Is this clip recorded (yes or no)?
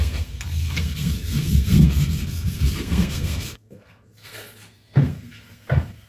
no